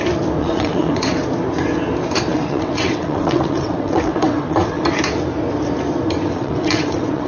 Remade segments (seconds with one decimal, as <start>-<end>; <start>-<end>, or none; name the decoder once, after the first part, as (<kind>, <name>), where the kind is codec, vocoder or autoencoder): 0.4-1.0 (vocoder, WaveNeXt); 2.3-4.8; 6.3-7.3